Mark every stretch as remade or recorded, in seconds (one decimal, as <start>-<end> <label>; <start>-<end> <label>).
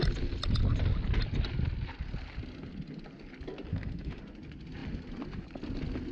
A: 0.0-3.7 recorded; 3.7-4.2 remade; 4.2-6.1 recorded